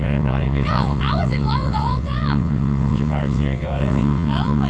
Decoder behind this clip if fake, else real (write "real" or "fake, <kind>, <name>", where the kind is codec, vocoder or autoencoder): fake, vocoder, WaveNeXt